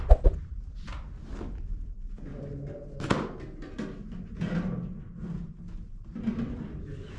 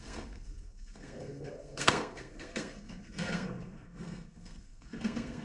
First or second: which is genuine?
first